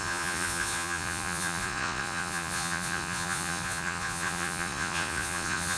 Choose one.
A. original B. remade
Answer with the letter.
B